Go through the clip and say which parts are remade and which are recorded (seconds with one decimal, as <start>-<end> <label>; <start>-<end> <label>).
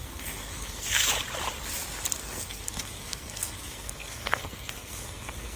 0.0-1.1 remade; 1.1-2.2 recorded; 2.2-5.6 remade